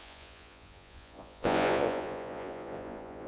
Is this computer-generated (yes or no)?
yes